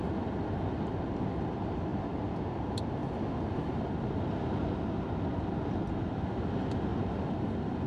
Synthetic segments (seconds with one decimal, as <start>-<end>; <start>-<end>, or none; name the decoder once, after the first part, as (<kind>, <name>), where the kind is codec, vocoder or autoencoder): none